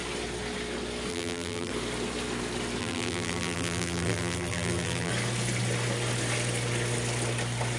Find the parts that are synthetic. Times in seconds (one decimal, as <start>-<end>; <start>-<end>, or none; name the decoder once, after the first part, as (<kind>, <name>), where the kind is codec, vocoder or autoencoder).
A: 1.1-1.7 (vocoder, BigVGAN v2); 2.8-5.1